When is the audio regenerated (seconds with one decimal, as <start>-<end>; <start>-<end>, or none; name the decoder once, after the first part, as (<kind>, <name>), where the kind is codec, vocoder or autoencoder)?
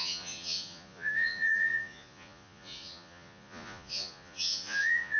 0.0-5.2 (vocoder, Vocos)